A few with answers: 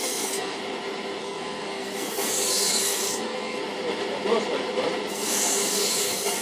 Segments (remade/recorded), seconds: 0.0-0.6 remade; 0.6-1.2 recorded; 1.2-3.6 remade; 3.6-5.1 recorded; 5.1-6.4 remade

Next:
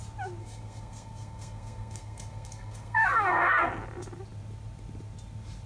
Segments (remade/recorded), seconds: 0.0-0.4 recorded; 0.4-3.7 remade; 3.7-5.7 recorded

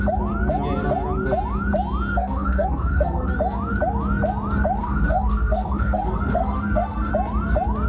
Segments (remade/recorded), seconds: 0.0-2.1 recorded; 2.1-3.3 remade; 3.3-4.8 recorded; 4.8-7.1 remade; 7.1-7.9 recorded